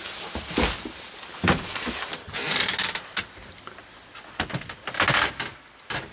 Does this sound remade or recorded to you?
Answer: recorded